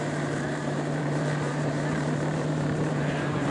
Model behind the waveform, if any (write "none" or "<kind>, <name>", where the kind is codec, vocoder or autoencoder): vocoder, BigVGAN v2